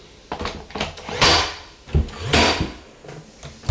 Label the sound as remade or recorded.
recorded